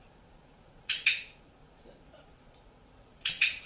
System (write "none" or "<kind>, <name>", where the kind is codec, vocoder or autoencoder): vocoder, Vocos